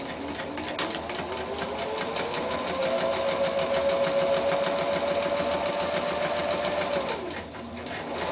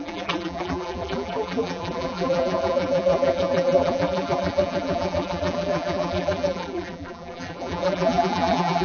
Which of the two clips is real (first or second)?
first